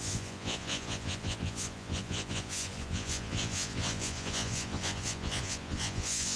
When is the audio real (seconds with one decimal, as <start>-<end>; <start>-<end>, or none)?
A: none